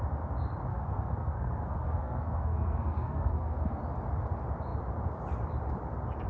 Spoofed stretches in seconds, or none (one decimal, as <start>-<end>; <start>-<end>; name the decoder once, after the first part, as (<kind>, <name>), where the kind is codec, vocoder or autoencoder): 0.7-3.8 (codec, SNAC)